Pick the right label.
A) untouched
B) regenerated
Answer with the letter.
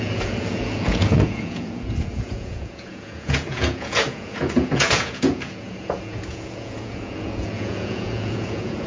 B